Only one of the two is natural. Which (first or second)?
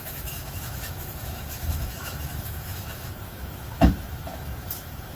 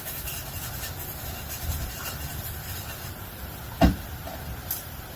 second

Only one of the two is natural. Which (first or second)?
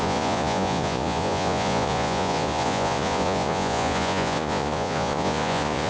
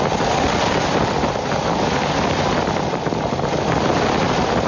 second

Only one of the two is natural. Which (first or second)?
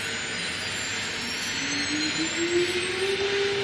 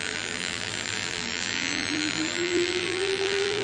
first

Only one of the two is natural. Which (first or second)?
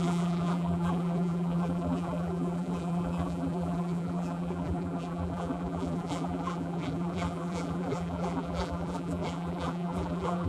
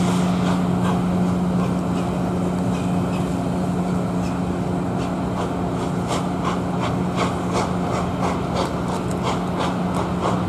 second